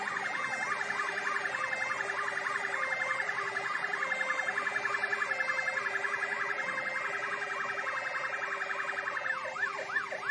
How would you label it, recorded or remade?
recorded